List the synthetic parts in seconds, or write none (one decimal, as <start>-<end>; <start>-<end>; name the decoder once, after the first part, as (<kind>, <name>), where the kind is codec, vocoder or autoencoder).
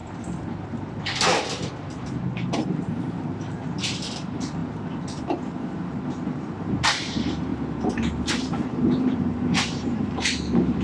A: 1.9-10.8 (vocoder, BigVGAN v2)